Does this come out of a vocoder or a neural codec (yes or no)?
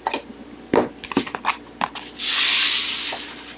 no